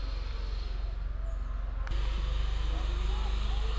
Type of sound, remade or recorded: recorded